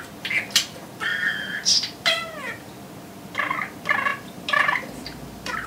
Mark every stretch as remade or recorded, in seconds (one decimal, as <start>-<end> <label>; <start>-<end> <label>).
0.0-1.1 recorded; 1.1-2.7 remade; 2.7-4.1 recorded; 4.1-5.7 remade